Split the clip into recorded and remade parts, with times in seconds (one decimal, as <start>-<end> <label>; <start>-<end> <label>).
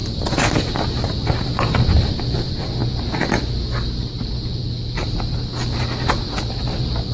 0.0-2.1 remade; 2.1-7.1 recorded